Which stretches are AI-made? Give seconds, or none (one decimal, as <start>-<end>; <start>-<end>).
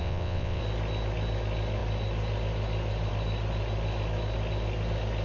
0.0-0.6